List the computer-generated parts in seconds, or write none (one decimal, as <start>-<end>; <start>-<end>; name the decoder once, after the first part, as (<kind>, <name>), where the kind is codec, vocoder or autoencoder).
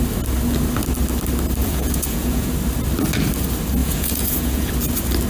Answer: 1.6-2.5 (vocoder, Vocos); 3.8-4.7